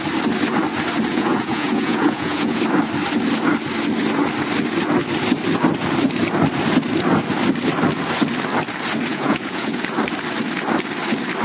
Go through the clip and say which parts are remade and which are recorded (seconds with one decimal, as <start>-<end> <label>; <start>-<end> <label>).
0.0-1.1 recorded; 1.1-2.6 remade; 2.6-9.1 recorded; 9.1-9.8 remade; 9.8-11.4 recorded